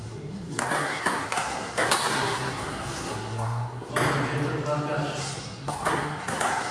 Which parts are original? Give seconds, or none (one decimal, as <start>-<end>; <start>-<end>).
3.9-5.2